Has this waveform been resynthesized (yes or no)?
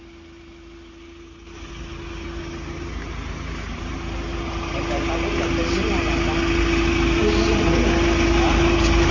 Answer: no